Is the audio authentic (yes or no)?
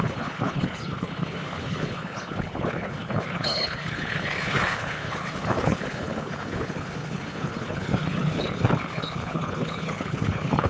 no